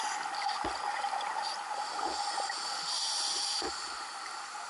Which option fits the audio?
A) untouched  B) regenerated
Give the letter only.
A